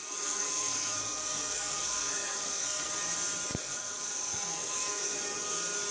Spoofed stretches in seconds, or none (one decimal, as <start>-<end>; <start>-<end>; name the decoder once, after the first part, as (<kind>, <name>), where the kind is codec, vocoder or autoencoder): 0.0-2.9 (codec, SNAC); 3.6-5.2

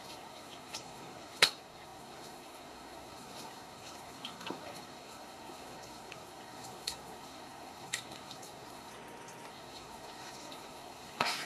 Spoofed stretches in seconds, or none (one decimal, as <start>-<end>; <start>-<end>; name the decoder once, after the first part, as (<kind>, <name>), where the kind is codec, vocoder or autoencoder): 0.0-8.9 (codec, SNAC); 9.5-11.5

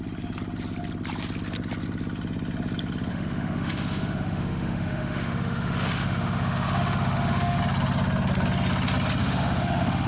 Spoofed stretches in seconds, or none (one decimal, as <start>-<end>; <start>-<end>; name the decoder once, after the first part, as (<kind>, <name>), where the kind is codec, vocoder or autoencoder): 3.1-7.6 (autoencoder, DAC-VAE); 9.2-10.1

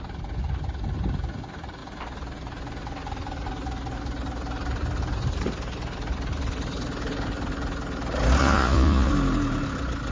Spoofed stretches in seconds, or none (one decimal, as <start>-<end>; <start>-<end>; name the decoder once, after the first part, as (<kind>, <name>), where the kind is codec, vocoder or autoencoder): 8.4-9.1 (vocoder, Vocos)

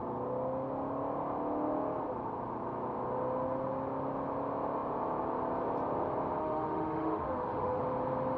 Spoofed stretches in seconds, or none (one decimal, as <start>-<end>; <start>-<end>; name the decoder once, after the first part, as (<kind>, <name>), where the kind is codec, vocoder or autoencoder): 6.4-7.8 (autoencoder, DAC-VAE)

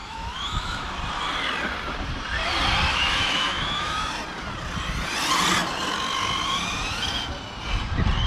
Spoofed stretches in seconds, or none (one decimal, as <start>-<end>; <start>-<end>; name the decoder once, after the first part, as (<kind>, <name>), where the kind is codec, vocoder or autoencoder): 0.0-1.0 (autoencoder, DAC-VAE); 2.9-4.1

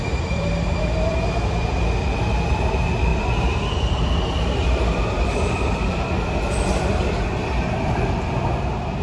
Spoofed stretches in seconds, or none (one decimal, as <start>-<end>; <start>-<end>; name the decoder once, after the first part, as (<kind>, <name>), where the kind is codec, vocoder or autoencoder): none